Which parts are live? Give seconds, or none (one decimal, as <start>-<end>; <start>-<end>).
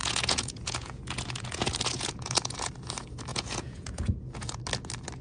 2.7-3.3; 4.6-5.2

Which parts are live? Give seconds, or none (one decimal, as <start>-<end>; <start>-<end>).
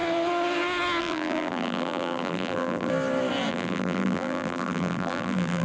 0.0-1.0; 2.9-3.5